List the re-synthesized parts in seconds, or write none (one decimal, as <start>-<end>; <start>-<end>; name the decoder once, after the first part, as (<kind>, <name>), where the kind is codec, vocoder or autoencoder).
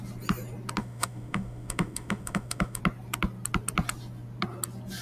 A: 0.8-2.8 (autoencoder, DAC-VAE)